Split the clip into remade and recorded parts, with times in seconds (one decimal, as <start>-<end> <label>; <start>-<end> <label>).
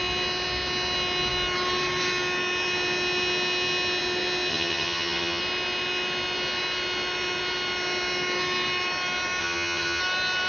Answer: 0.0-4.5 recorded; 4.5-5.4 remade; 5.4-9.4 recorded; 9.4-10.0 remade; 10.0-10.5 recorded